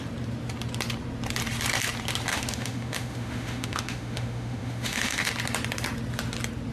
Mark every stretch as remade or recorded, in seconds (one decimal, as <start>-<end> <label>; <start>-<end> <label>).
0.0-2.3 recorded; 2.3-5.3 remade; 5.3-6.7 recorded

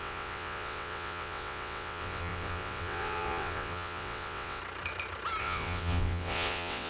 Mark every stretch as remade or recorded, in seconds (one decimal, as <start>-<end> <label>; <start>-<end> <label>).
0.0-4.6 remade; 4.6-5.4 recorded; 5.4-6.9 remade

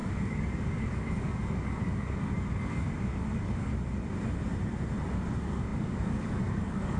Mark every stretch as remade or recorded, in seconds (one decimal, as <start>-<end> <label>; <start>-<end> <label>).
0.0-3.7 remade; 3.7-5.3 recorded; 5.3-7.0 remade

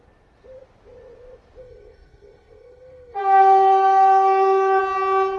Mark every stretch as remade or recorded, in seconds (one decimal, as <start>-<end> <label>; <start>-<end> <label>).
0.0-1.6 recorded; 1.6-4.8 remade; 4.8-5.4 recorded

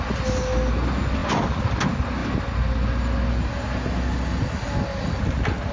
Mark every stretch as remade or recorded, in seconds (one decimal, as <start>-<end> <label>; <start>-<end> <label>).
0.0-5.7 recorded

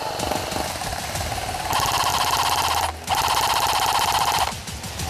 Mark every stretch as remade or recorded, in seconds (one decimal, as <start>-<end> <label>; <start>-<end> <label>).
0.0-5.1 recorded

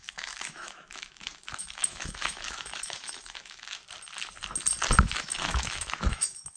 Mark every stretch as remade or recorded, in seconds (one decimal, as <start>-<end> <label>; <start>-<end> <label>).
0.0-3.8 remade; 3.8-5.0 recorded; 5.0-6.6 remade